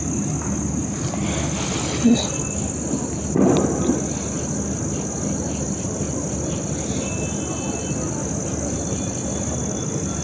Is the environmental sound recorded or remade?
recorded